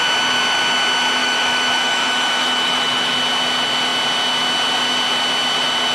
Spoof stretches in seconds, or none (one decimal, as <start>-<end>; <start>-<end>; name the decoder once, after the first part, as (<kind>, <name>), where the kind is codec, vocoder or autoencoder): 1.2-3.1 (autoencoder, DAC-VAE)